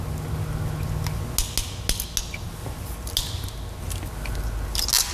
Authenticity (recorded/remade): recorded